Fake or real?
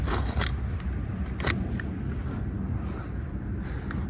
real